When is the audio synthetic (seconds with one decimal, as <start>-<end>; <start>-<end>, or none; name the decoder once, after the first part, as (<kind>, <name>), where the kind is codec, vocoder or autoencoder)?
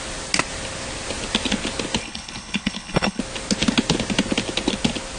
2.0-3.2 (codec, HILCodec)